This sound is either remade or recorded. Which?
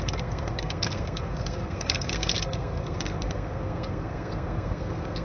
remade